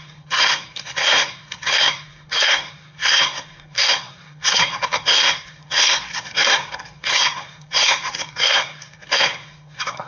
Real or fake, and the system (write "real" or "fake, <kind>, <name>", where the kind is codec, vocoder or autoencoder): fake, codec, SNAC